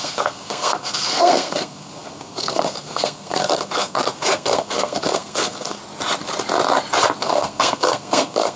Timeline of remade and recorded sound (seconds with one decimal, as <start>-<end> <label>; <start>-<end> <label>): 0.0-5.8 remade; 5.8-7.2 recorded; 7.2-8.6 remade